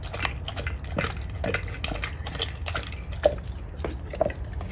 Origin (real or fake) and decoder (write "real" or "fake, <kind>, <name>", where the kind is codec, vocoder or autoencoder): real